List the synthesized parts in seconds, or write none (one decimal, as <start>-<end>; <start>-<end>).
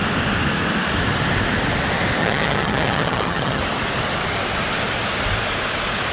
2.2-3.6